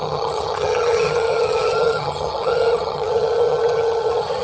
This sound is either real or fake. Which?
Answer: fake